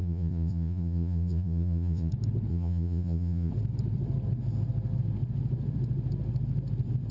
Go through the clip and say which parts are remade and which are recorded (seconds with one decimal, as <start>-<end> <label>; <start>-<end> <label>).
0.0-2.1 remade; 2.1-2.5 recorded; 2.5-3.5 remade; 3.5-7.1 recorded

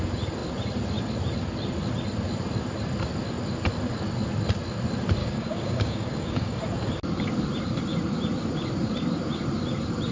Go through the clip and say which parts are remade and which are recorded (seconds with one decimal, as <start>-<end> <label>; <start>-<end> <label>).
0.0-5.2 recorded; 5.2-6.6 remade; 6.6-10.1 recorded

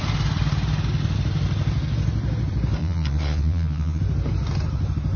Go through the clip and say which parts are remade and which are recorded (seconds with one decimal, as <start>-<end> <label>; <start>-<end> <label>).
0.0-2.8 recorded; 2.8-4.0 remade; 4.0-5.2 recorded

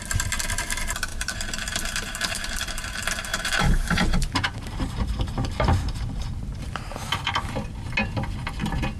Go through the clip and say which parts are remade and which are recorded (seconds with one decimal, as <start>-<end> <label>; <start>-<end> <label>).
0.0-1.1 recorded; 1.1-2.6 remade; 2.6-3.3 recorded; 3.3-7.5 remade; 7.5-9.0 recorded

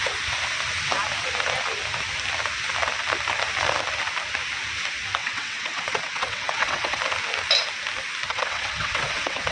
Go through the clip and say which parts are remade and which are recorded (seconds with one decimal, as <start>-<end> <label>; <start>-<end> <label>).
0.0-5.2 recorded; 5.2-7.0 remade; 7.0-8.3 recorded; 8.3-9.5 remade

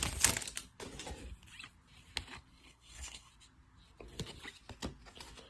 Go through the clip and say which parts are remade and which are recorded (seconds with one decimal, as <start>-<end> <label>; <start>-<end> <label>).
0.0-2.5 recorded; 2.5-3.3 remade; 3.3-5.5 recorded